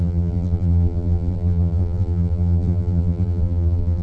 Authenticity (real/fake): fake